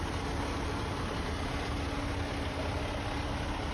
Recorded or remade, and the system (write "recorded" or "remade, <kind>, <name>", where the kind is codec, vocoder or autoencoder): recorded